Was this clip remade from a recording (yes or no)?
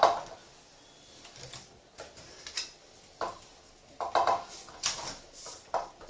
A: no